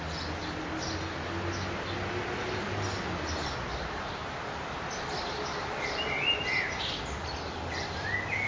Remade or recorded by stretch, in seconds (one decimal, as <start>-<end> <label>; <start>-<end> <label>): 0.0-8.5 recorded